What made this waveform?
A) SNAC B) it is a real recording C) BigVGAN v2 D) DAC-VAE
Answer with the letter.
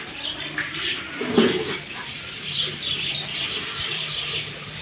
C